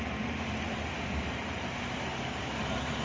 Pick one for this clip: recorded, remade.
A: remade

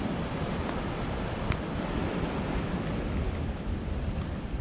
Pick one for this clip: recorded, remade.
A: recorded